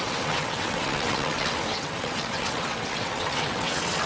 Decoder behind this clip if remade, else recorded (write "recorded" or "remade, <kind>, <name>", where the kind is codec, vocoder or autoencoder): remade, vocoder, WaveNeXt